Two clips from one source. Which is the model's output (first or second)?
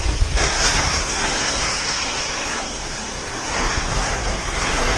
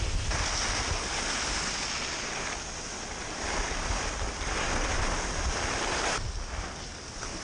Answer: first